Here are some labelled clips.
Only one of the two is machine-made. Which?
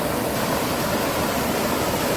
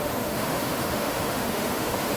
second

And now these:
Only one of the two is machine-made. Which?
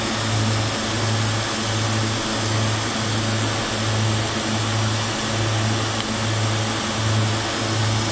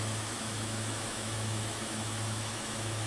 second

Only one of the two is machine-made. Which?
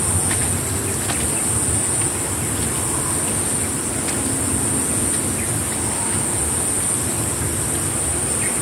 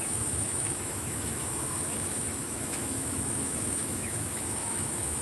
second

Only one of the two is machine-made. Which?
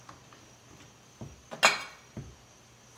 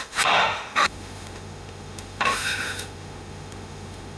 second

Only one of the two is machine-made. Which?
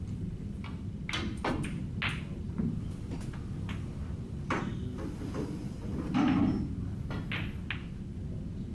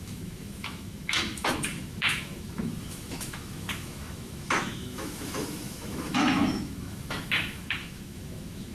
second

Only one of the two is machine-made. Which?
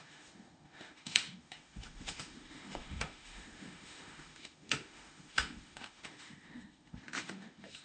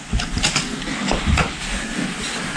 first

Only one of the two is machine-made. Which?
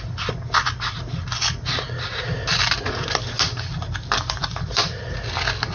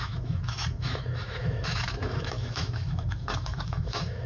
second